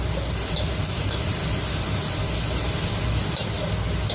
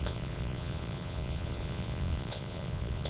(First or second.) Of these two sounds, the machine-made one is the second